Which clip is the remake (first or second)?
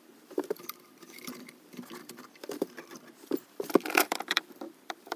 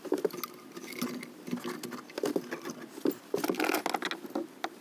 first